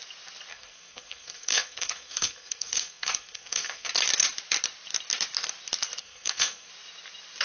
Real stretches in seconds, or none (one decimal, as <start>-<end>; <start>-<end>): 0.0-0.5; 3.9-6.0; 6.7-7.4